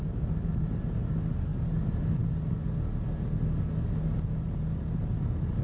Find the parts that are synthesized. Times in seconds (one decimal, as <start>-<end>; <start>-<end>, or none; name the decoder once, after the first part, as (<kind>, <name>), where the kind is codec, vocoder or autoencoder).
none